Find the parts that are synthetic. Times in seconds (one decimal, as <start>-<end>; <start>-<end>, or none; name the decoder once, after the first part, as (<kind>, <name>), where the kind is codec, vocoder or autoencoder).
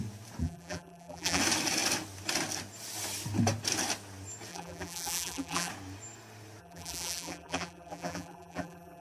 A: 0.4-1.4 (vocoder, BigVGAN v2); 4.5-5.7; 6.6-9.0